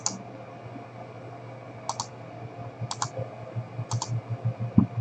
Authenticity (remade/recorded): recorded